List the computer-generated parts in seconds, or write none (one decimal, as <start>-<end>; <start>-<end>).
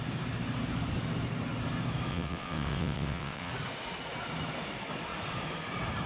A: 2.1-3.5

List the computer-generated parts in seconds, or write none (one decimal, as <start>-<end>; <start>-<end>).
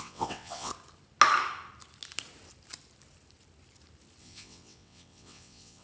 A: 0.0-0.7; 4.2-5.8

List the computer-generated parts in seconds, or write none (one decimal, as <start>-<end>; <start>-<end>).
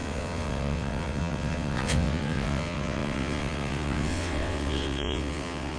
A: 0.0-5.8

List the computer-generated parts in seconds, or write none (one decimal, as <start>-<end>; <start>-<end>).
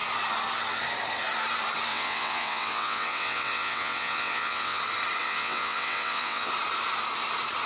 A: 1.9-4.8; 5.2-6.5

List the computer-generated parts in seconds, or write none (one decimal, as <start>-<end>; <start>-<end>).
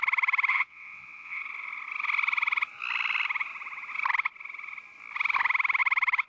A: 0.5-1.4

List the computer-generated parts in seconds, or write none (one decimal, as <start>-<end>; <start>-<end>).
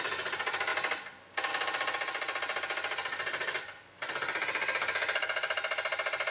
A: none